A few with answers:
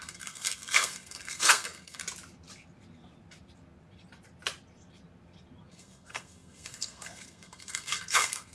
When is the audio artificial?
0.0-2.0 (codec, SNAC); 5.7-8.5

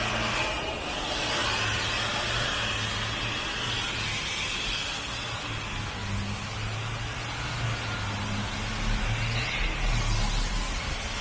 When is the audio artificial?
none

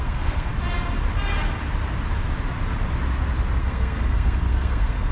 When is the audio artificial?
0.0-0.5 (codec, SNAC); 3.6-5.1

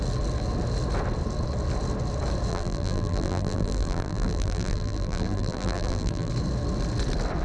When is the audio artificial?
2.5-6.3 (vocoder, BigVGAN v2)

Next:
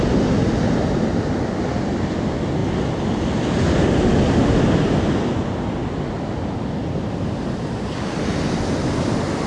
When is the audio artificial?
none

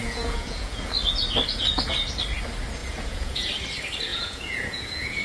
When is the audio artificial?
0.0-0.9 (vocoder, Vocos); 2.8-3.5; 4.1-5.2

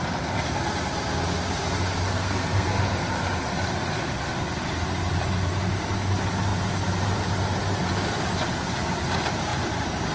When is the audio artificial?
2.1-2.8 (codec, SNAC)